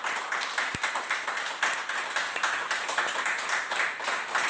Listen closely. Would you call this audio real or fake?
real